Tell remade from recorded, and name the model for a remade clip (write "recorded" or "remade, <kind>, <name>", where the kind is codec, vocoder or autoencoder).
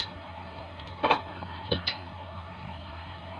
remade, codec, SNAC